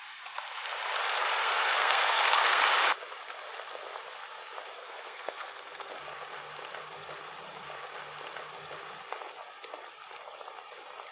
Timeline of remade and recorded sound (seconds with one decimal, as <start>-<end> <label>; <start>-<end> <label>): 0.0-1.4 recorded; 1.4-2.6 remade; 2.6-4.8 recorded; 4.8-5.9 remade; 5.9-11.1 recorded